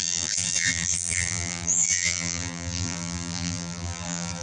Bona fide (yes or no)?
no